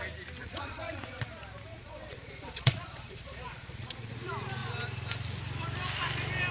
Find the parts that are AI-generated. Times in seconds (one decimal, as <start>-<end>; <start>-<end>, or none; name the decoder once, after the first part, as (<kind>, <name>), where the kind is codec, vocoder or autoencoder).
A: 0.4-1.2 (vocoder, Vocos); 1.7-4.1